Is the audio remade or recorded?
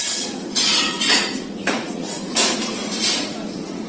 remade